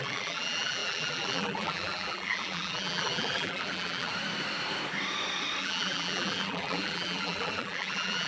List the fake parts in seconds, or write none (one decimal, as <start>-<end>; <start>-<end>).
0.0-4.1; 5.6-8.3